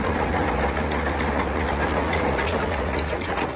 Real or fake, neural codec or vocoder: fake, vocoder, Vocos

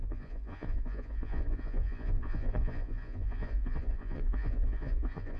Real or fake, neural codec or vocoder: fake, vocoder, Vocos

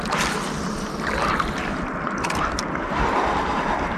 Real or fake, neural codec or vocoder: real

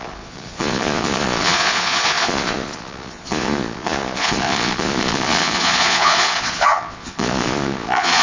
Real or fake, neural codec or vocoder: fake, vocoder, Vocos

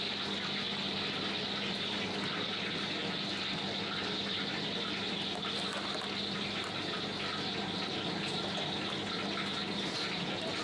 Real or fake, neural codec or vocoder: real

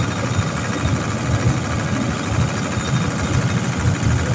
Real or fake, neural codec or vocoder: real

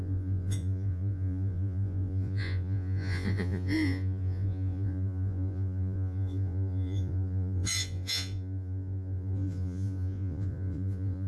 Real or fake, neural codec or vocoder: fake, vocoder, Vocos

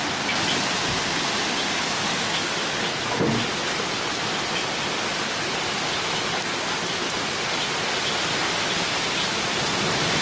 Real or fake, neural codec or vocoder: real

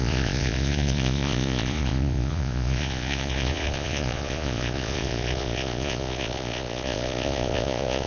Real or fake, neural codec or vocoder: fake, vocoder, Vocos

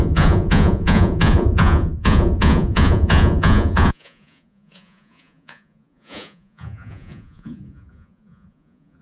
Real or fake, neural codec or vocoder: fake, vocoder, Vocos